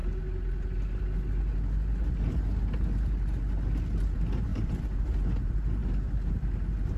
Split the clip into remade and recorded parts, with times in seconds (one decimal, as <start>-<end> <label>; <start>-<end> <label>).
0.0-4.0 recorded; 4.0-5.8 remade; 5.8-7.0 recorded